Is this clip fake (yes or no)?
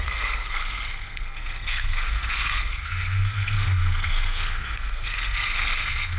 yes